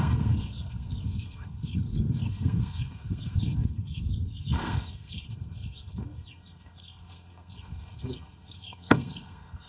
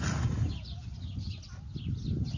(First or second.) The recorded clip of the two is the second